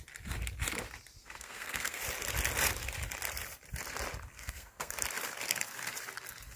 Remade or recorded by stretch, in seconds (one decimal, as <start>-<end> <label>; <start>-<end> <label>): 0.0-1.2 recorded; 1.2-2.0 remade; 2.0-4.3 recorded; 4.3-4.9 remade; 4.9-6.6 recorded